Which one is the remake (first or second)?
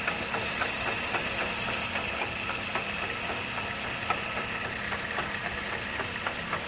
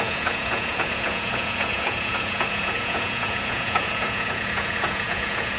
second